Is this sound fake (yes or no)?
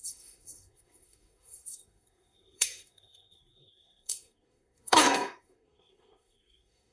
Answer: yes